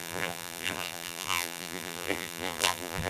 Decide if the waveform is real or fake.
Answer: fake